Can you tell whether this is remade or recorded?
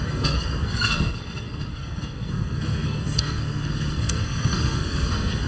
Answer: remade